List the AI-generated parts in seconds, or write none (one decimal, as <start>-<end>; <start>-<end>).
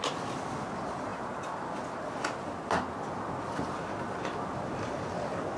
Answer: none